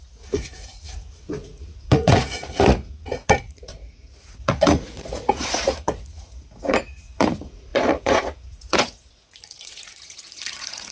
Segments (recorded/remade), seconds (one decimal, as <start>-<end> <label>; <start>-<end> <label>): 0.0-10.9 remade